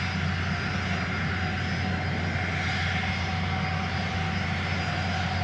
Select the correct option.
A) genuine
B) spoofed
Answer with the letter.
A